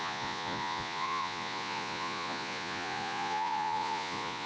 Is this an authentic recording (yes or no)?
no